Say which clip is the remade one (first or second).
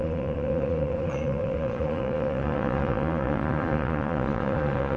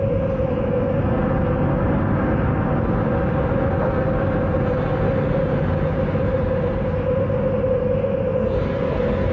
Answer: first